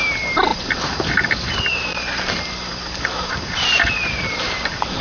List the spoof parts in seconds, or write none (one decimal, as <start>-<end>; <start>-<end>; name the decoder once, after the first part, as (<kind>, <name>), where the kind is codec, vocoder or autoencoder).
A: 0.0-5.0 (vocoder, BigVGAN v2)